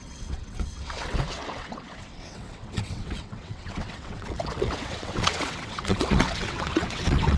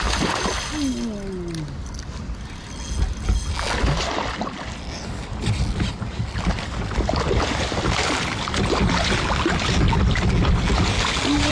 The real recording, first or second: second